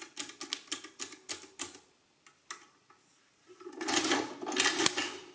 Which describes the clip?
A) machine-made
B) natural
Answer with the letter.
B